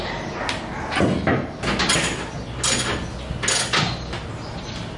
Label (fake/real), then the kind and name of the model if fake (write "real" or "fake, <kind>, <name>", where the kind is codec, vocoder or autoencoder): real